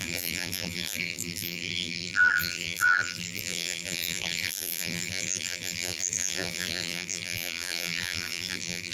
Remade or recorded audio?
remade